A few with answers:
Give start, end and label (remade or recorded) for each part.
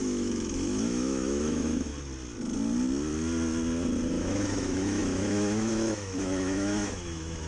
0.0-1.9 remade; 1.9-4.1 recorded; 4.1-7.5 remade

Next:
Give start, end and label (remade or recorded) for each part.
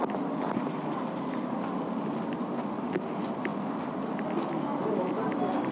0.0-5.7 recorded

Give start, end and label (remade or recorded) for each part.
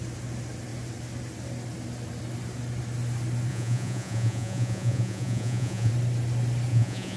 0.0-3.5 recorded; 3.5-5.9 remade; 5.9-6.7 recorded; 6.7-7.2 remade